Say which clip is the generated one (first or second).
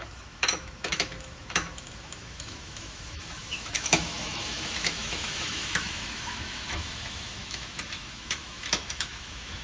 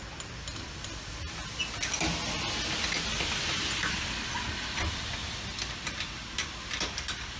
first